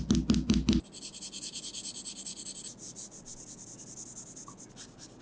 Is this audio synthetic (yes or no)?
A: no